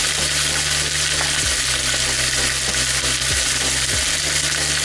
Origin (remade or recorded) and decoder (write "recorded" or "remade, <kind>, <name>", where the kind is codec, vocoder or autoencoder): recorded